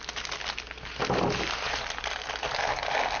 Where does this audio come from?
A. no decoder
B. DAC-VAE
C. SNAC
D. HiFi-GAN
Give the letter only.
A